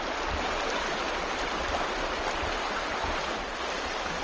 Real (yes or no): yes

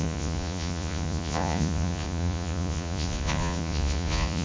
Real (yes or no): no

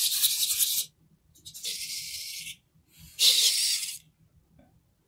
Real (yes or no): yes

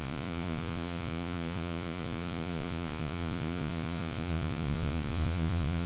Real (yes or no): no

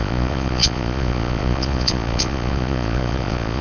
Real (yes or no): no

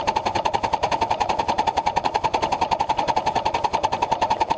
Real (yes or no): yes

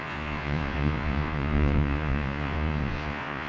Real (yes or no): no